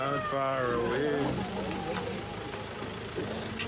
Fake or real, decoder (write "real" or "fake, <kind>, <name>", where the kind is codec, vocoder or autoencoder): real